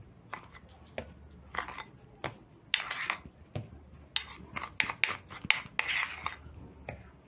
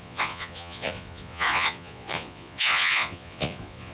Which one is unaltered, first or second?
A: first